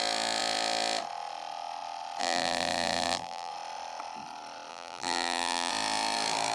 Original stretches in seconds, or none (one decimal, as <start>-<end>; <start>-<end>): 0.0-2.2; 3.5-4.7; 5.7-6.5